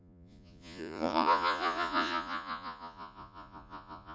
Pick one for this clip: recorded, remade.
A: remade